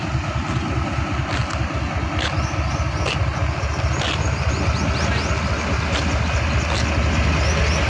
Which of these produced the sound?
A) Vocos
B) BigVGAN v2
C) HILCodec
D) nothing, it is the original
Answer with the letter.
D